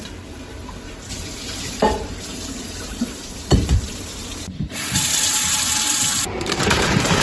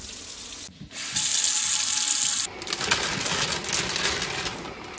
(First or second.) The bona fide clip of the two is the second